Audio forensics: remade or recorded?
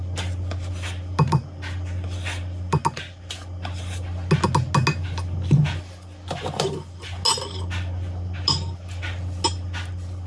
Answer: recorded